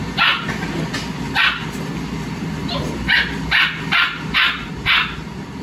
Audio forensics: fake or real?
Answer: real